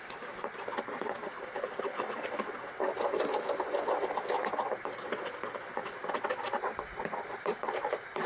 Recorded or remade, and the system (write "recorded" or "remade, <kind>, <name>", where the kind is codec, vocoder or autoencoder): recorded